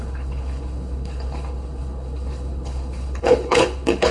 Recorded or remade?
remade